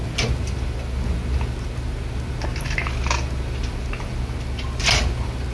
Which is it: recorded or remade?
recorded